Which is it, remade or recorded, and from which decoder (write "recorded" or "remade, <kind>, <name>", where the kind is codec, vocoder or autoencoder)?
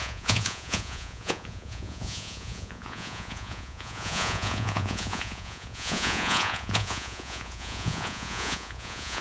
remade, vocoder, Vocos